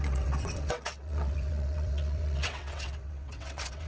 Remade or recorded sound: remade